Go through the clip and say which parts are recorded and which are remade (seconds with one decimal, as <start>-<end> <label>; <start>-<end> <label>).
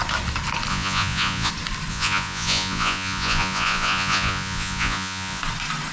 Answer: 0.0-0.7 recorded; 0.7-1.5 remade; 1.5-1.9 recorded; 1.9-5.4 remade; 5.4-5.9 recorded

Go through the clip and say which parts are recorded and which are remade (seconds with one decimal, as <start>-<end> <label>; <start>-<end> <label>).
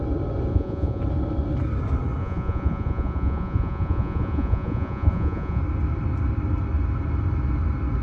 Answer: 0.0-0.5 recorded; 0.5-1.0 remade; 1.0-2.2 recorded; 2.2-5.6 remade; 5.6-8.0 recorded